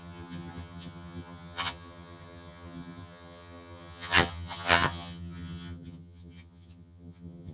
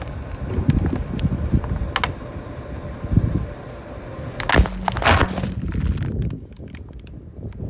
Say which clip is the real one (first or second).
second